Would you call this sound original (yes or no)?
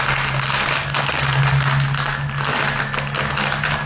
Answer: yes